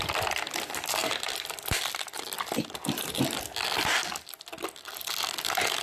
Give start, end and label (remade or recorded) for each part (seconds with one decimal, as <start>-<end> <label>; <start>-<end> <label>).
0.0-1.0 recorded; 1.0-3.2 remade; 3.2-5.8 recorded